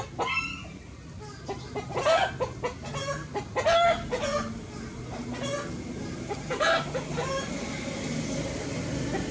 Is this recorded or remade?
recorded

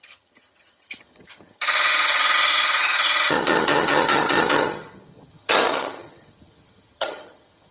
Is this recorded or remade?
remade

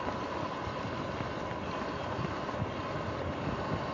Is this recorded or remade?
recorded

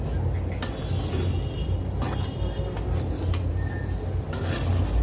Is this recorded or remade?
recorded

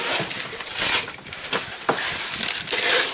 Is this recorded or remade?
recorded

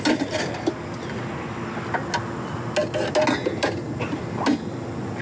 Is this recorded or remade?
recorded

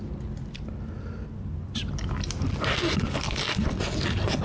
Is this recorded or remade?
recorded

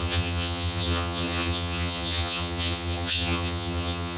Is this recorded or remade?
remade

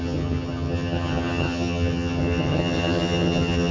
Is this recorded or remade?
remade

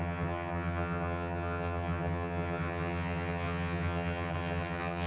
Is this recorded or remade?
remade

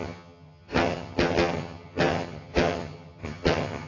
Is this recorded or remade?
remade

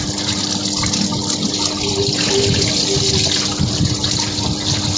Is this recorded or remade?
recorded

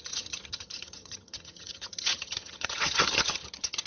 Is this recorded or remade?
remade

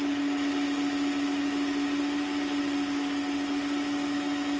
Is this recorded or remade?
recorded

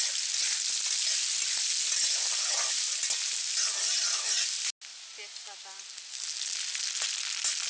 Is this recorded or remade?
recorded